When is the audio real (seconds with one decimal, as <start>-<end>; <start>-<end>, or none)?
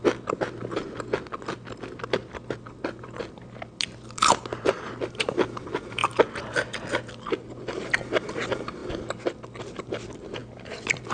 0.0-11.1